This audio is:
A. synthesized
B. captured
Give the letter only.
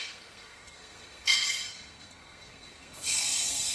A